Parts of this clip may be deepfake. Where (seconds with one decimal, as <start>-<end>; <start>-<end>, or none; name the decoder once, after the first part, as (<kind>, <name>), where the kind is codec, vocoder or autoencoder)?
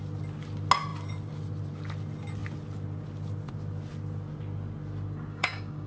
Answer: 5.3-5.9 (codec, DAC)